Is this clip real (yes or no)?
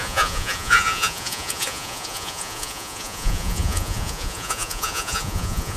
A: no